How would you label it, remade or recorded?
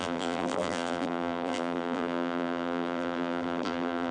remade